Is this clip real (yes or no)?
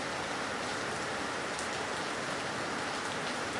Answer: yes